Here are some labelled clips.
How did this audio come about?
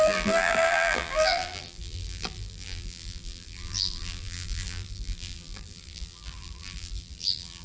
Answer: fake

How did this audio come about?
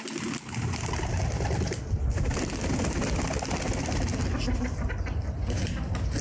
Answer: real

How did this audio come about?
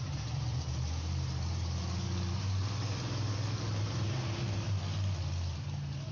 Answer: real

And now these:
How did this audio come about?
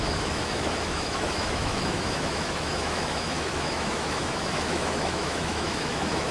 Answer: fake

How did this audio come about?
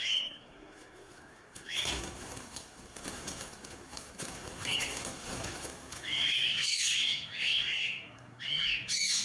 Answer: fake